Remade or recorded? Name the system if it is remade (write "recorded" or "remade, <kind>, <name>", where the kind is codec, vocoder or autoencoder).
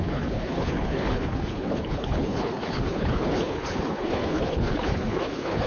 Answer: remade, codec, HILCodec